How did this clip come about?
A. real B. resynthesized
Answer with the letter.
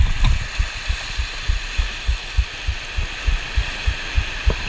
A